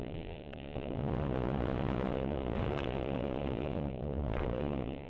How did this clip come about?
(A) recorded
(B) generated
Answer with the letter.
B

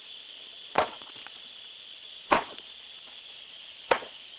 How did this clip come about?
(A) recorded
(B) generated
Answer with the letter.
B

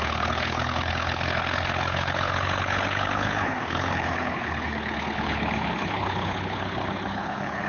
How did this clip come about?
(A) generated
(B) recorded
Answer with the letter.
A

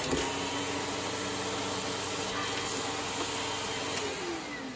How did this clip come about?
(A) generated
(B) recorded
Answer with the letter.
B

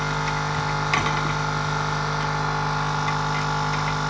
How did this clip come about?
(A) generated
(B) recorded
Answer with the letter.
B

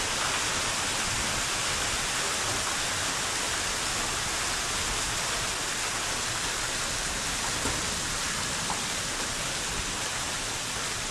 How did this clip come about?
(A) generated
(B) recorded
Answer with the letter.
B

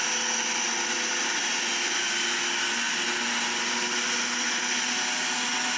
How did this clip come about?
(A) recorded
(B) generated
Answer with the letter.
A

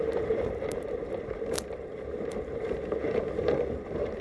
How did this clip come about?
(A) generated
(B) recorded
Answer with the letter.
A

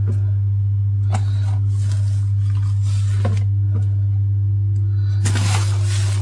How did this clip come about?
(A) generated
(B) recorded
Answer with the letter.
B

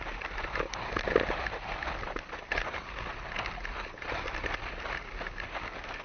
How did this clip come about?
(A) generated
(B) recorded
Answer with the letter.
B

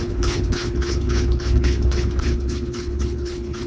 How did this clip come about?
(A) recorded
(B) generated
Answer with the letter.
B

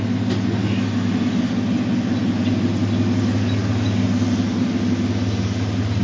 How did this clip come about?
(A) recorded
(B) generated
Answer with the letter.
A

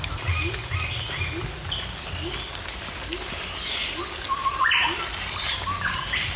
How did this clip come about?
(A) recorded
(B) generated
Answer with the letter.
A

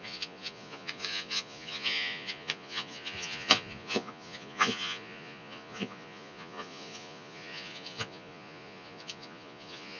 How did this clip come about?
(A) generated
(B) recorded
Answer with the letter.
A